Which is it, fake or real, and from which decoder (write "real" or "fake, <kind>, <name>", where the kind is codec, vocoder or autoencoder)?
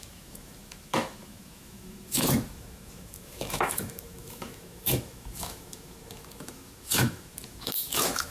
fake, autoencoder, DAC-VAE